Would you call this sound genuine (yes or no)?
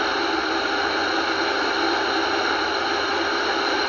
no